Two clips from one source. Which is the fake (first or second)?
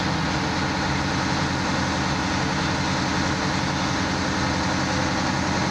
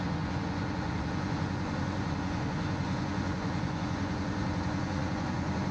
second